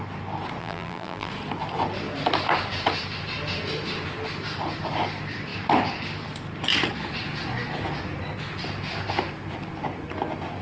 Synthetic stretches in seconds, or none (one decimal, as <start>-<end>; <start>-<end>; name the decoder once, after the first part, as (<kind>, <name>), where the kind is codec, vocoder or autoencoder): 0.6-1.3 (vocoder, BigVGAN v2)